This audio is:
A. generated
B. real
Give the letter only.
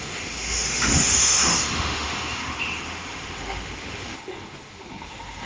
A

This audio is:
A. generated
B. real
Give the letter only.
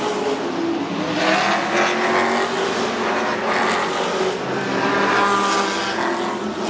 B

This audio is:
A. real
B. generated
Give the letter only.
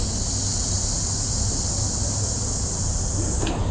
A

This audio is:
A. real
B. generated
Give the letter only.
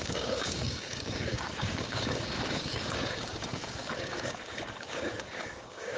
B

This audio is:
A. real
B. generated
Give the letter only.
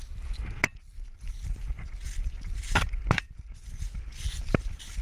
A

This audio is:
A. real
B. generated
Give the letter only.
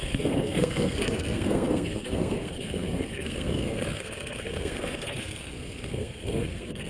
B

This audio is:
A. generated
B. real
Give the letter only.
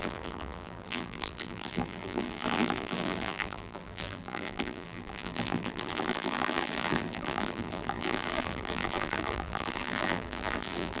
A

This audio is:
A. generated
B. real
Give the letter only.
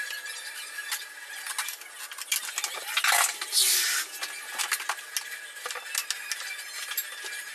B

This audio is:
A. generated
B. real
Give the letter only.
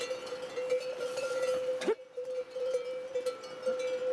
B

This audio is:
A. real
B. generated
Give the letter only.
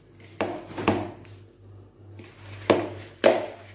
A